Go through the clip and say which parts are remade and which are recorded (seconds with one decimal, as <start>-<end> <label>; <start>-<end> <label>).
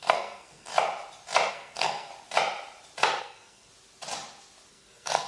0.0-0.7 remade; 0.7-1.5 recorded; 1.5-2.1 remade; 2.1-3.2 recorded; 3.2-3.7 remade; 3.7-4.7 recorded; 4.7-5.3 remade